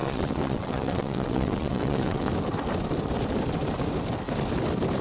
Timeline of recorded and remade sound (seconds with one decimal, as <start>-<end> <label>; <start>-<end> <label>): 0.0-2.3 remade; 2.3-5.0 recorded